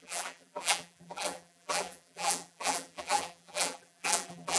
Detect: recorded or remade remade